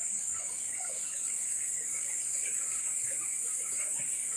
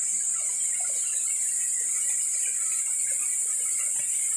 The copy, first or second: first